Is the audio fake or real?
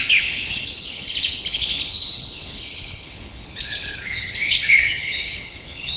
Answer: fake